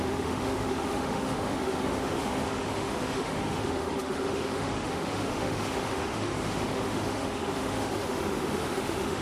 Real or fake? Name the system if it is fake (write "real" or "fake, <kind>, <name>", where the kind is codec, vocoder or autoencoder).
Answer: fake, autoencoder, DAC-VAE